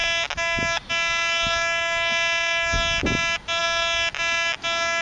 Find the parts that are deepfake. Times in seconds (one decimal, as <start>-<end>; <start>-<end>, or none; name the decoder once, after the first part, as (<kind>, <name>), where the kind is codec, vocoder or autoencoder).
none